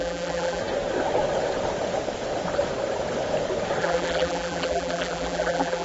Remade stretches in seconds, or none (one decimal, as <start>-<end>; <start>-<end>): 0.0-0.6; 3.8-5.8